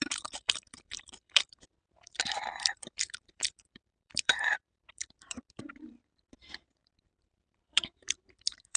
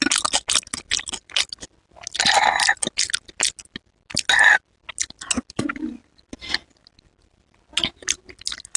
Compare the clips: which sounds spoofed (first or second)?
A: first